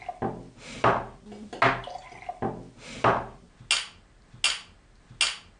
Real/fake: real